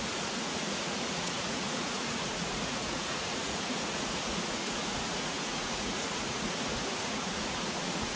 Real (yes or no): no